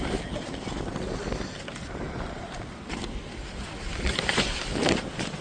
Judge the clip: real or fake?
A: real